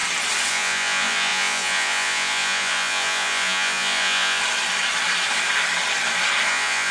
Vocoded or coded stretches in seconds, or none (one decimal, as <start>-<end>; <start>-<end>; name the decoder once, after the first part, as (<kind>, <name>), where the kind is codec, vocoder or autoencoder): 0.5-4.4 (vocoder, Vocos); 6.5-6.9